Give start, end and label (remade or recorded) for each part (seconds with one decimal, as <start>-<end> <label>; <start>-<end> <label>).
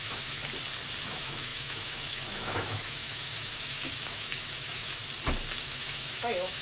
0.0-0.4 remade; 0.4-1.0 recorded; 1.0-5.0 remade; 5.0-5.6 recorded; 5.6-6.6 remade